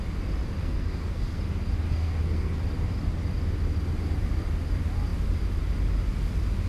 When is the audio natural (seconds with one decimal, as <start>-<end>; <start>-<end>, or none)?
0.0-0.6; 1.4-1.9; 2.6-6.7